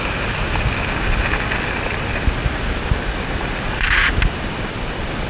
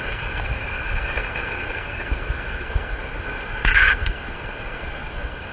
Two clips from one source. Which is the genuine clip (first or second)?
first